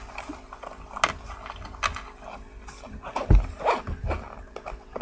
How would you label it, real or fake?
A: real